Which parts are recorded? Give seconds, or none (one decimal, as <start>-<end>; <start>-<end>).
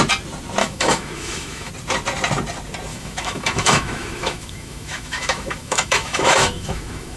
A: 0.0-0.6; 1.7-2.9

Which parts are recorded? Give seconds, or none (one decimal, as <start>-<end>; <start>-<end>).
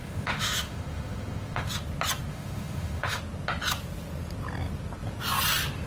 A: 1.7-2.3; 3.2-5.9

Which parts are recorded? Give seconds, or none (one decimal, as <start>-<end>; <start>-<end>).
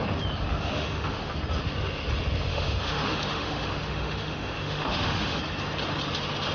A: 0.0-0.5; 1.3-2.5; 5.4-6.5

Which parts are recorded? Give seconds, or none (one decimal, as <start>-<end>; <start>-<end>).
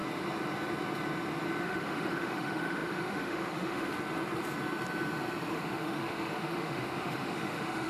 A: 0.0-1.6; 3.9-5.5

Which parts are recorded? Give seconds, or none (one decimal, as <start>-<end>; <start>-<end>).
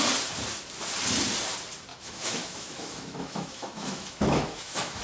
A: 0.0-1.9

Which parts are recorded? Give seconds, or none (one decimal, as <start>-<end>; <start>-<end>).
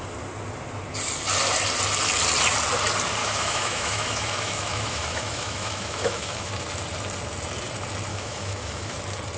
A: 0.0-3.2; 6.5-8.1; 9.0-9.4